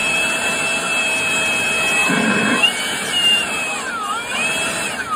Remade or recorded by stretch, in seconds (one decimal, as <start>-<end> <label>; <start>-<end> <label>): 0.0-1.0 remade; 1.0-2.0 recorded; 2.0-3.8 remade; 3.8-5.2 recorded